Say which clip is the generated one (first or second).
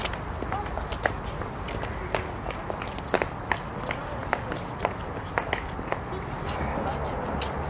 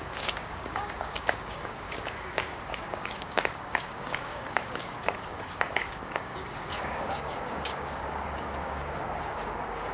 second